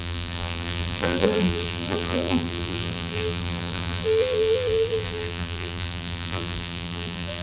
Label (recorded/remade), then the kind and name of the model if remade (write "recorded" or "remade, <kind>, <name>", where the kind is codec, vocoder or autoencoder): remade, vocoder, BigVGAN v2